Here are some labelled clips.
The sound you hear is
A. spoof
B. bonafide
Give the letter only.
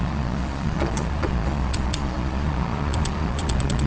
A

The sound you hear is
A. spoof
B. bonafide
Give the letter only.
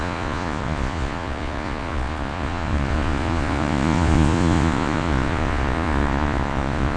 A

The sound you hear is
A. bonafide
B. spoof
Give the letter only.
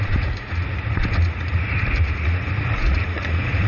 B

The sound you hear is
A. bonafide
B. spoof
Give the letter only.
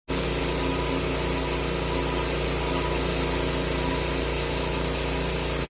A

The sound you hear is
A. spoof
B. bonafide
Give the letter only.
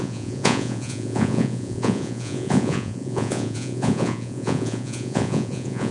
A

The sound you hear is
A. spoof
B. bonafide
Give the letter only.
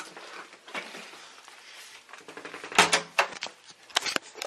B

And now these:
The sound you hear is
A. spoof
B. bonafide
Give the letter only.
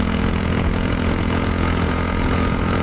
A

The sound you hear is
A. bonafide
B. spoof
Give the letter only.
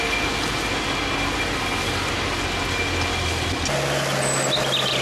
A